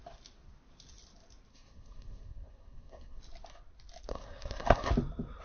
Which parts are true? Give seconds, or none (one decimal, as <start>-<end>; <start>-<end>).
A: 0.0-1.5; 3.2-4.1; 4.9-5.4